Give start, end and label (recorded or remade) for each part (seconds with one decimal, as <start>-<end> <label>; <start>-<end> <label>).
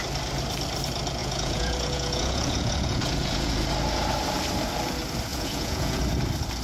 0.0-1.2 recorded; 1.2-3.5 remade; 3.5-5.3 recorded; 5.3-6.0 remade; 6.0-6.6 recorded